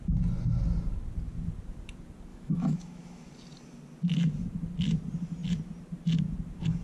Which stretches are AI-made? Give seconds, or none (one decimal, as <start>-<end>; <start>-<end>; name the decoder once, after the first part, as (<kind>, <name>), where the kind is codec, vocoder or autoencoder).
2.3-3.3 (autoencoder, DAC-VAE)

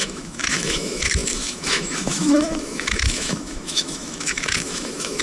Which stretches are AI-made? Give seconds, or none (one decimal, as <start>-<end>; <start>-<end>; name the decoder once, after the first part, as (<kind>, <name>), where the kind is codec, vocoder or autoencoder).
0.0-5.2 (autoencoder, DAC-VAE)

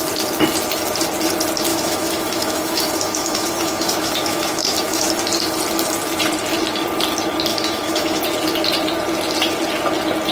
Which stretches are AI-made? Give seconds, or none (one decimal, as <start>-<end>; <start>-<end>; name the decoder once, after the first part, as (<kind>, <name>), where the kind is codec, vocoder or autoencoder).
1.7-5.1 (autoencoder, DAC-VAE); 7.5-8.2